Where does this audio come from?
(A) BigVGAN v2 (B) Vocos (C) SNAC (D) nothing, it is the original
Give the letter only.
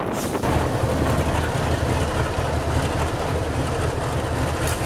D